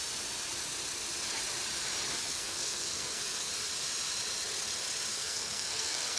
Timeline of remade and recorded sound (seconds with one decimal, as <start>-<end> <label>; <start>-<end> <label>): 0.0-2.1 recorded; 2.1-3.5 remade; 3.5-5.1 recorded; 5.1-6.2 remade